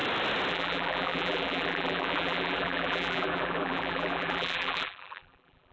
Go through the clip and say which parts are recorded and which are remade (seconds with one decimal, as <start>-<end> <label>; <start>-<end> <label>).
0.0-0.5 recorded; 0.5-5.7 remade